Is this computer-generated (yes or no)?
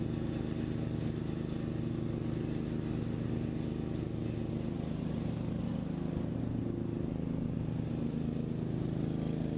no